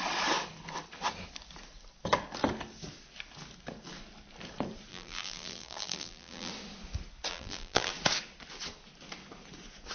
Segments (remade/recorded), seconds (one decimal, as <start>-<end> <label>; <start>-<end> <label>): 0.0-4.9 recorded; 4.9-6.5 remade; 6.5-7.3 recorded; 7.3-7.9 remade; 7.9-9.9 recorded